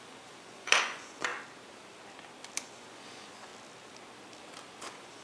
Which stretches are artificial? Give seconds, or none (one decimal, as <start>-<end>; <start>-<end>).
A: 0.0-1.3; 2.6-3.5; 4.8-5.2